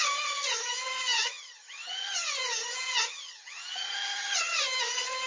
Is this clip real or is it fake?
fake